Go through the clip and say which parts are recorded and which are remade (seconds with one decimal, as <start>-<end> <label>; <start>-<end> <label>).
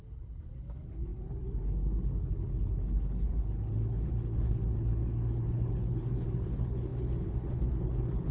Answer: 0.0-8.3 remade